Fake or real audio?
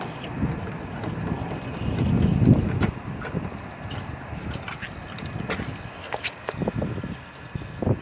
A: real